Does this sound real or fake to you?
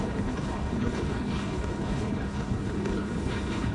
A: fake